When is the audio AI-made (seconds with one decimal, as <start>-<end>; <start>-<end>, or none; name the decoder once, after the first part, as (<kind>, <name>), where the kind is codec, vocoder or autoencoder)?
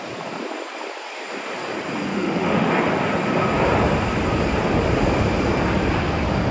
2.1-2.7 (autoencoder, DAC-VAE)